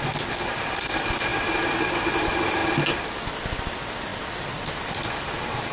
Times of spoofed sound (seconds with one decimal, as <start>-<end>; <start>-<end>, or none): none

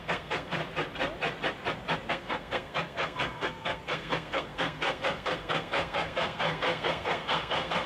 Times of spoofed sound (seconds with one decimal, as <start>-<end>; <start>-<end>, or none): 0.0-0.6; 2.1-7.9

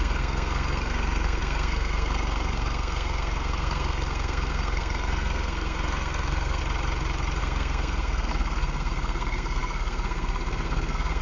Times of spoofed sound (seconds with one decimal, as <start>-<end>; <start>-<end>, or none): 0.0-6.6; 7.4-11.2

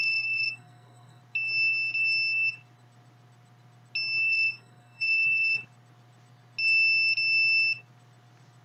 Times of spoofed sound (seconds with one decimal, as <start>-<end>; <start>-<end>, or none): 0.0-1.2; 4.3-5.6

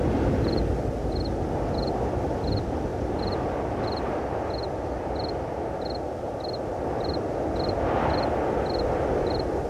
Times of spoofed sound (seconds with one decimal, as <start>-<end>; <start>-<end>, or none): none

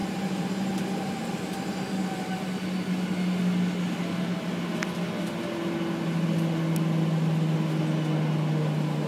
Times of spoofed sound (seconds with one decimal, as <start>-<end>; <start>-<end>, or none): none

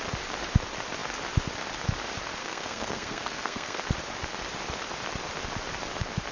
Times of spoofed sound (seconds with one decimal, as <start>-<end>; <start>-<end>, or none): 2.4-3.9

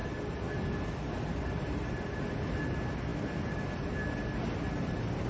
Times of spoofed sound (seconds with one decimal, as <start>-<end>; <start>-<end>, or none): none